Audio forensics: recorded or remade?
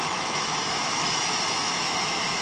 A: remade